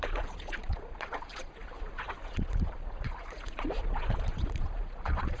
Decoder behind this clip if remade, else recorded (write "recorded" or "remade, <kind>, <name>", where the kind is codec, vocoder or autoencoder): remade, vocoder, Vocos